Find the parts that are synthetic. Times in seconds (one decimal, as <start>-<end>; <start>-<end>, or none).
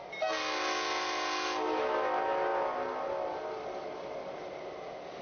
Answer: none